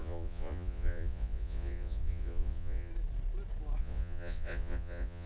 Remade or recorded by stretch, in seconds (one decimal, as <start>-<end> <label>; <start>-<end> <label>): 0.0-2.9 remade; 2.9-3.8 recorded; 3.8-5.3 remade